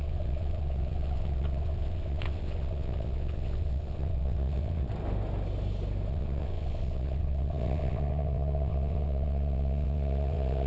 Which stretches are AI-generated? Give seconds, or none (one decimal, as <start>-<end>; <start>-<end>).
0.0-4.9; 6.1-10.7